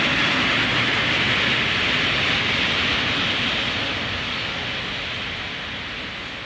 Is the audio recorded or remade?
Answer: recorded